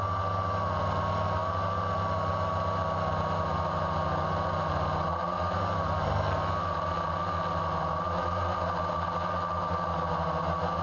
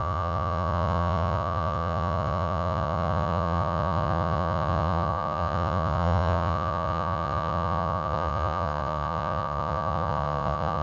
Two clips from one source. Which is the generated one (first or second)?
second